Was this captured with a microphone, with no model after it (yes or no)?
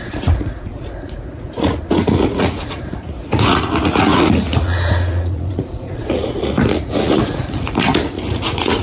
no